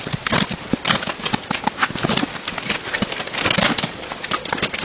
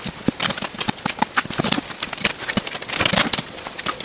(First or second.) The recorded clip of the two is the first